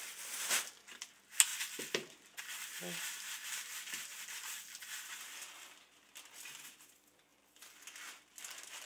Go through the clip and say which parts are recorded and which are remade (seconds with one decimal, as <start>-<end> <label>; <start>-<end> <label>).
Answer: 0.0-8.9 recorded